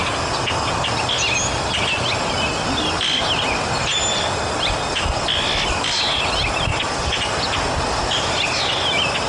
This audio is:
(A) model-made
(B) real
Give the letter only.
B